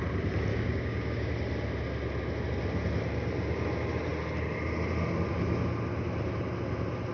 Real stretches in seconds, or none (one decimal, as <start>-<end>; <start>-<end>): 0.0-0.5; 1.3-7.1